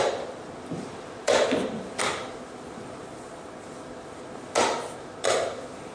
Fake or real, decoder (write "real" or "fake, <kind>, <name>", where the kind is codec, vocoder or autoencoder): real